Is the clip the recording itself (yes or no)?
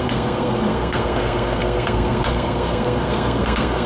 no